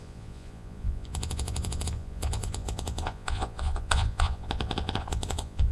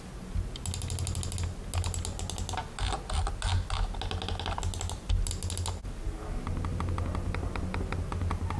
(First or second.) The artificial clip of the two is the first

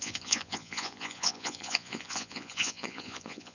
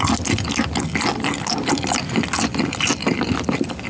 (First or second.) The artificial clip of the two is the first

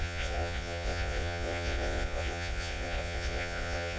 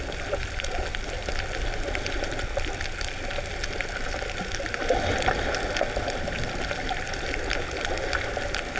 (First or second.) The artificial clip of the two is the first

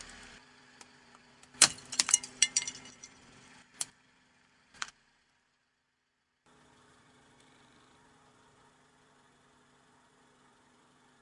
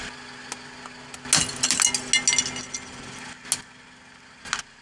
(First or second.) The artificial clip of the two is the first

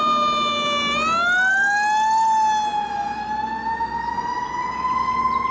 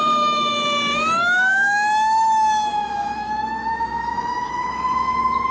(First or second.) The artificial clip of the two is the second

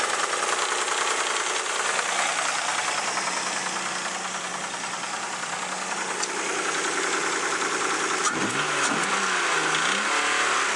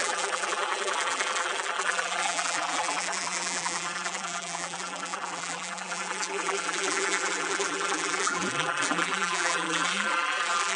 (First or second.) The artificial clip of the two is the second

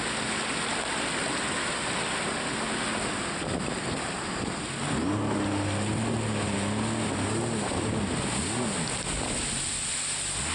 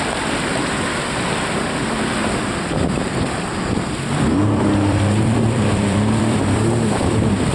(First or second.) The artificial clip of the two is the second